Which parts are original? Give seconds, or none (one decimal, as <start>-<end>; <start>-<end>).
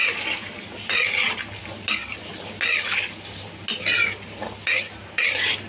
0.0-5.7